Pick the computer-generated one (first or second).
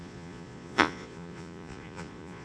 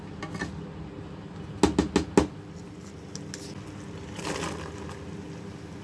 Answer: first